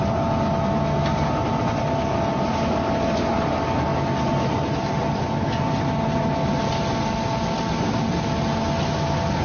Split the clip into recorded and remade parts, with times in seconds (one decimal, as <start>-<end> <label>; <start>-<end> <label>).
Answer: 0.0-9.4 recorded